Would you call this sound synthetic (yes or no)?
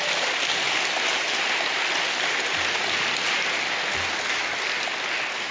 no